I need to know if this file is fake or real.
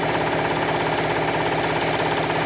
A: real